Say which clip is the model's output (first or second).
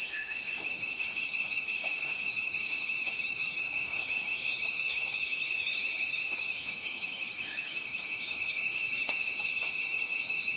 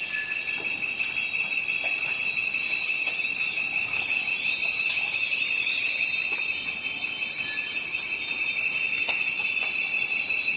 first